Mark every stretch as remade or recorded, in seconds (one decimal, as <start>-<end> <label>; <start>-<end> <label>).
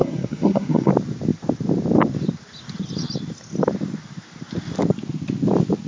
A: 0.0-0.9 remade; 0.9-5.9 recorded